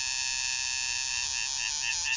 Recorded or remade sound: recorded